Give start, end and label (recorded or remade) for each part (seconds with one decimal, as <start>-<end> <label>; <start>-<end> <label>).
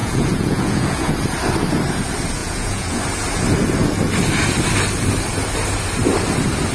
0.0-1.1 remade; 1.1-2.4 recorded; 2.4-3.0 remade; 3.0-6.7 recorded